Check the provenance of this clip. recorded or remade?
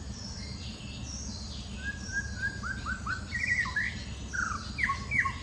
recorded